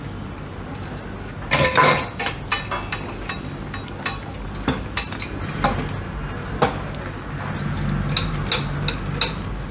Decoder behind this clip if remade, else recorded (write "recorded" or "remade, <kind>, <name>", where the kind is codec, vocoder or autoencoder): recorded